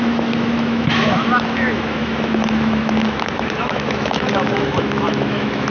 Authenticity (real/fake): fake